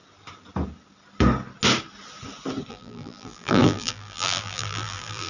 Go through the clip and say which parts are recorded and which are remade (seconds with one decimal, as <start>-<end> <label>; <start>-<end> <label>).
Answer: 0.0-2.7 recorded; 2.7-5.3 remade